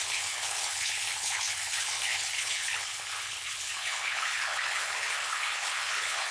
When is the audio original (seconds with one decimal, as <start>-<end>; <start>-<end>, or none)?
none